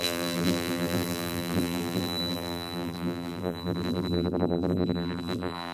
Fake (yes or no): yes